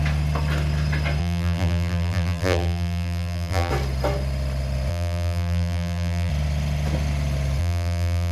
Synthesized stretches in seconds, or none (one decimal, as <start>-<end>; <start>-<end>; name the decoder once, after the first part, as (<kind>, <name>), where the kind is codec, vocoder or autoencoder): 1.2-3.7 (vocoder, BigVGAN v2); 4.9-6.3; 7.6-8.3